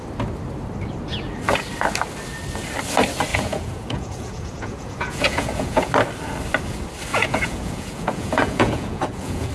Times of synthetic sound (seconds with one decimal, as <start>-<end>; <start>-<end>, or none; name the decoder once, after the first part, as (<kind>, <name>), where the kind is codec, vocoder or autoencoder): 3.3-5.9 (vocoder, Vocos); 7.1-9.5